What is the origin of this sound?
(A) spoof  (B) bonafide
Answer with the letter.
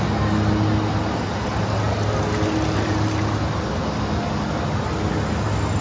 B